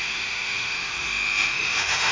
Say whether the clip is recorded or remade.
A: remade